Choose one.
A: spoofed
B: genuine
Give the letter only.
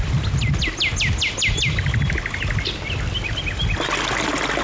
B